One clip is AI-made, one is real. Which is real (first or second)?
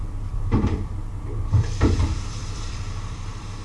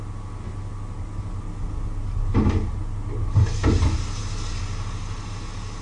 second